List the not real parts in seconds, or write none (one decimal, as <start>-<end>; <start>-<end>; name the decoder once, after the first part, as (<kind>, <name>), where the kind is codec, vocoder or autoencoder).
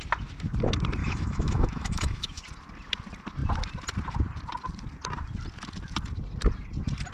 1.0-2.4 (autoencoder, DAC-VAE)